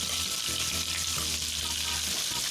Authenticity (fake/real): real